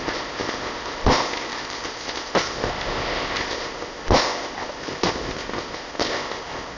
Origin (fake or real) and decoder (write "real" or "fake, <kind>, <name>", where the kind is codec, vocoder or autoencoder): fake, codec, ZipCodec